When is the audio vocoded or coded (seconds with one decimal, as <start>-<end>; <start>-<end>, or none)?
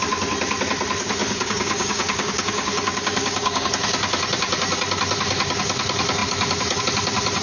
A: 1.2-3.7